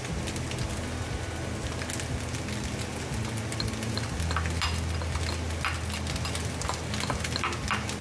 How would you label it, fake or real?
real